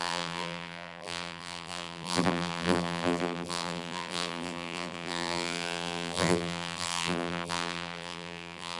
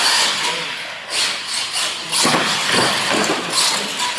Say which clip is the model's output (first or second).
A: first